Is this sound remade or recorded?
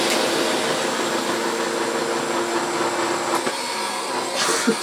recorded